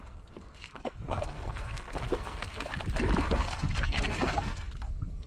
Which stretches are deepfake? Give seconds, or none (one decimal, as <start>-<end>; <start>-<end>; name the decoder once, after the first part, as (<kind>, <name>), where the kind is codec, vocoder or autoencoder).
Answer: 0.0-2.7 (codec, SNAC); 3.2-5.3